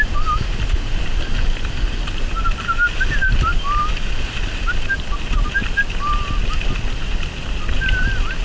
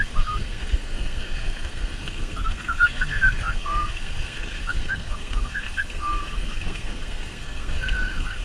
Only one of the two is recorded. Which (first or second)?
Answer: first